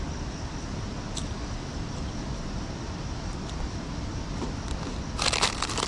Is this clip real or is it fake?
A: real